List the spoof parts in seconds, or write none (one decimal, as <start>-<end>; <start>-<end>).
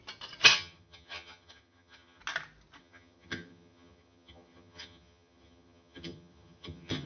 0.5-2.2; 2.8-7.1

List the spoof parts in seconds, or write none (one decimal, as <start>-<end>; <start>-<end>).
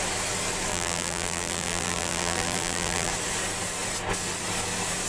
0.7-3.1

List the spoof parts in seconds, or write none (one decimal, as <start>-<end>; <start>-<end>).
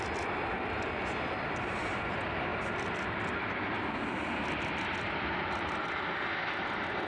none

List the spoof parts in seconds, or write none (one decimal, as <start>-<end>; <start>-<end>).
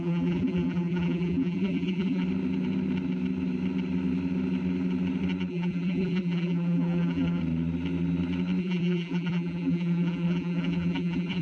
0.0-2.2; 5.5-7.4; 8.6-11.4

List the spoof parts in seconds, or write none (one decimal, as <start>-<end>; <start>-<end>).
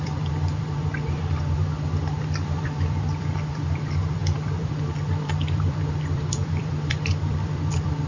0.0-8.1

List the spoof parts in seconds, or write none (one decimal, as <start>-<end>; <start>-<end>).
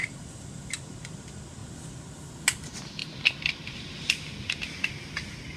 0.0-0.7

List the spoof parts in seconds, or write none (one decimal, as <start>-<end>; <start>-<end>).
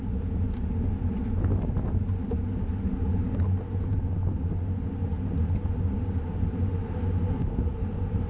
none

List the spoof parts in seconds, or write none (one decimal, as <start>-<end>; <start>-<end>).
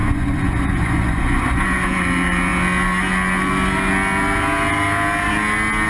0.0-2.0